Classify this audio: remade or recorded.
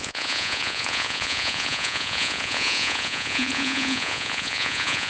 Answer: remade